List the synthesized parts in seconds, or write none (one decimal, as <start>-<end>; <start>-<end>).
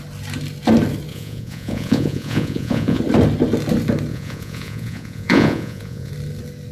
1.1-3.0; 4.1-6.1